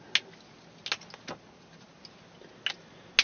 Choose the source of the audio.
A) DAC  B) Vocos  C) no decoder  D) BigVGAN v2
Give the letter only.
C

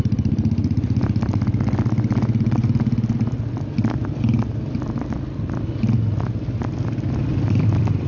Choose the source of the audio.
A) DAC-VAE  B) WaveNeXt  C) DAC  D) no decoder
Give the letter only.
D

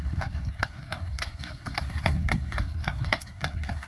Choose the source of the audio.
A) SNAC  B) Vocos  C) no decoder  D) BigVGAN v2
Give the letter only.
A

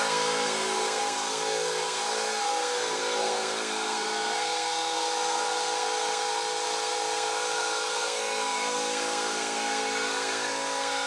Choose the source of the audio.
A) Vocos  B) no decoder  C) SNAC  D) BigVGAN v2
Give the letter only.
C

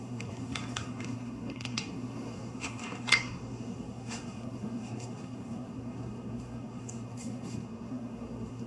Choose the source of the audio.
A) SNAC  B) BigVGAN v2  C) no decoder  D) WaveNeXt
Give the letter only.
A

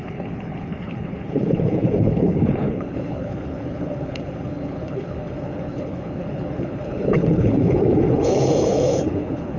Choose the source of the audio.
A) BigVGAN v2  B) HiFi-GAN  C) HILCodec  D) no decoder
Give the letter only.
C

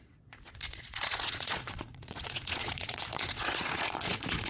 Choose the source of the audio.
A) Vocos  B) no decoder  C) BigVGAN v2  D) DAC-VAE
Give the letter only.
A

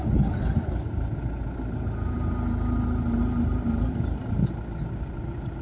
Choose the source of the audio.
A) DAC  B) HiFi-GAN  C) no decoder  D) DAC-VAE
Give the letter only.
C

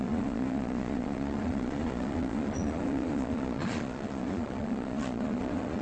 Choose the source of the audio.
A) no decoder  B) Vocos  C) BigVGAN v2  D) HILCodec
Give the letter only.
B